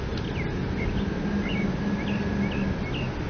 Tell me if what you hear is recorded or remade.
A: recorded